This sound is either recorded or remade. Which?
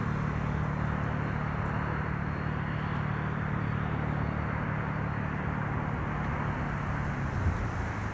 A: recorded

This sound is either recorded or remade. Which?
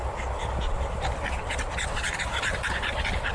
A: recorded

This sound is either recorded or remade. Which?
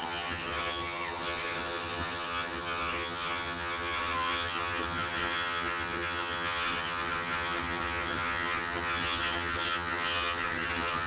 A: remade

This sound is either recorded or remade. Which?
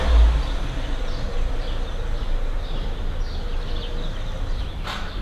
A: recorded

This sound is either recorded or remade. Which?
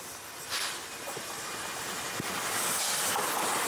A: recorded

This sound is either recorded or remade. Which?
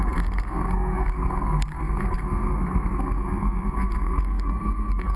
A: remade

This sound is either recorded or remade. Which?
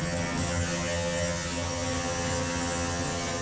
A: remade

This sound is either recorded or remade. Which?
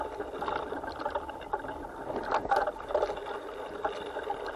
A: recorded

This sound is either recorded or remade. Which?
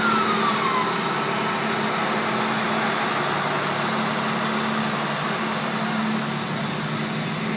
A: recorded